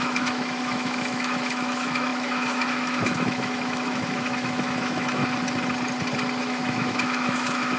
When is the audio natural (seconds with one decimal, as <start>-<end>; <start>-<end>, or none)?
5.2-6.4